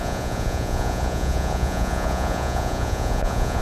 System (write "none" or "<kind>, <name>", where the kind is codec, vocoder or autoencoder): vocoder, Vocos